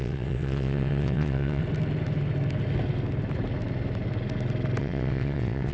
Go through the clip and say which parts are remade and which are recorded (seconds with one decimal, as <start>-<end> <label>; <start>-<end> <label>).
0.0-1.6 remade; 1.6-4.8 recorded; 4.8-5.7 remade

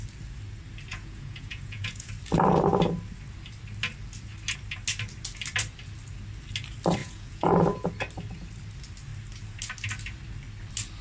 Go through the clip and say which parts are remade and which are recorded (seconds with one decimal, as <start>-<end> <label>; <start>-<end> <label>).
0.0-0.9 recorded; 0.9-2.1 remade; 2.1-7.0 recorded; 7.0-7.9 remade; 7.9-11.0 recorded

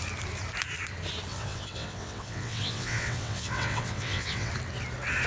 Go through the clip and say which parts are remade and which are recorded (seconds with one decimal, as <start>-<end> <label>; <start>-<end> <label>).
0.0-1.3 recorded; 1.3-4.5 remade; 4.5-5.3 recorded

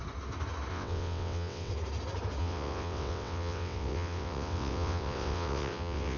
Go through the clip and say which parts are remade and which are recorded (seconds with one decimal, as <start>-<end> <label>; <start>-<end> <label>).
0.0-0.7 recorded; 0.7-1.7 remade; 1.7-2.4 recorded; 2.4-6.2 remade

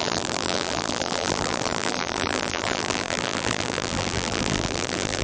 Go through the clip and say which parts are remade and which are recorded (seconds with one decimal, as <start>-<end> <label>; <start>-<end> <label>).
0.0-5.2 remade

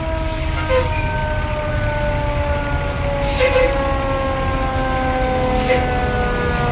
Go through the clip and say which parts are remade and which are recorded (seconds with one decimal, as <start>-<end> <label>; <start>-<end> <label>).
0.0-6.7 recorded

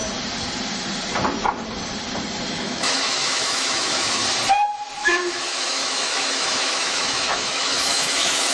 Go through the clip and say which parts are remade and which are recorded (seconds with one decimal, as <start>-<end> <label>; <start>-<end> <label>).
0.0-2.5 recorded; 2.5-4.2 remade; 4.2-5.0 recorded; 5.0-8.5 remade